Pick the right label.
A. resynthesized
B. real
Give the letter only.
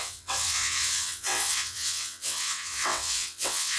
A